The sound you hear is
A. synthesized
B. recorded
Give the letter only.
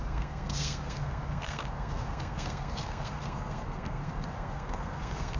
A